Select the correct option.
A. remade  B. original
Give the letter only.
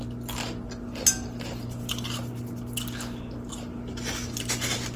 B